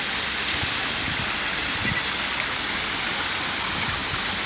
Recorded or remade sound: recorded